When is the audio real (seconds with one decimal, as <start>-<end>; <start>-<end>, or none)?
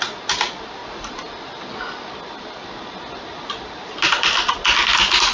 0.0-5.3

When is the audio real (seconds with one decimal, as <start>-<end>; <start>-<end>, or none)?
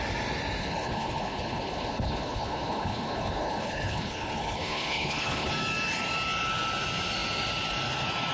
0.0-0.6; 5.5-8.3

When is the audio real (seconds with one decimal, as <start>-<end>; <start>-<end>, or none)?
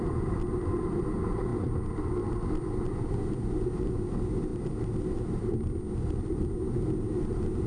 0.0-7.7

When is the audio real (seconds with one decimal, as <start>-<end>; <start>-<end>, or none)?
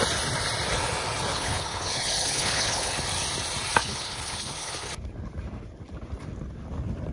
0.0-1.3; 2.9-3.8; 4.9-7.1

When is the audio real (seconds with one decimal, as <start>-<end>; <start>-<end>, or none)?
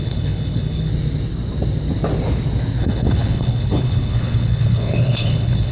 0.9-2.8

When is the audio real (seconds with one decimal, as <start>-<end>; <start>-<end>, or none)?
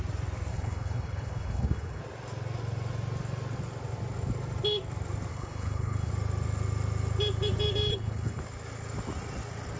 0.0-0.5; 2.0-5.3; 6.1-7.9; 8.4-9.8